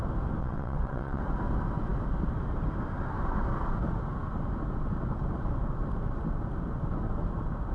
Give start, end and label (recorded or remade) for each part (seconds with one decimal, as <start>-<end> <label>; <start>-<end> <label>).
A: 0.0-0.4 recorded; 0.4-1.2 remade; 1.2-7.7 recorded